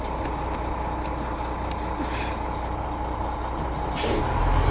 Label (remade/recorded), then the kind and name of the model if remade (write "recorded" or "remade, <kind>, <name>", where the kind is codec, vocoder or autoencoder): recorded